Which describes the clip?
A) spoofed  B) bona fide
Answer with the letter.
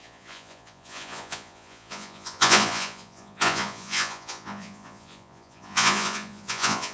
A